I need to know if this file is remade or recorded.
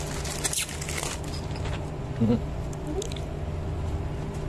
recorded